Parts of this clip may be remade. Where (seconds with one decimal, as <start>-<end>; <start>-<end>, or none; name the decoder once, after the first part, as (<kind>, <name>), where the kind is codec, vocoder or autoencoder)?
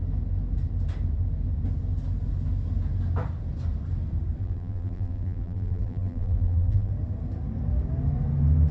4.4-6.9 (vocoder, BigVGAN v2)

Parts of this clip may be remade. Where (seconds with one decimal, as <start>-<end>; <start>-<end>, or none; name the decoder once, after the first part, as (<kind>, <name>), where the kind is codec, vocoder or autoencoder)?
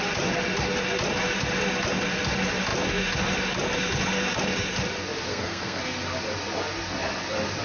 5.3-5.8 (codec, SNAC)